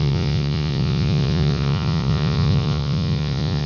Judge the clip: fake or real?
fake